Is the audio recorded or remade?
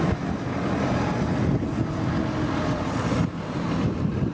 remade